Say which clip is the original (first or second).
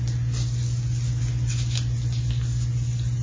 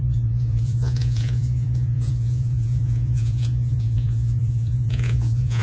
first